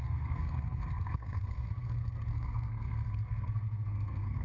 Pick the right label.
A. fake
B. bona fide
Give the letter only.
A